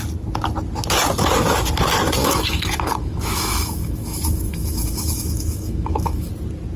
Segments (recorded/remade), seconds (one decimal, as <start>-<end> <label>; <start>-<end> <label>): 0.0-2.2 recorded; 2.2-6.3 remade; 6.3-6.8 recorded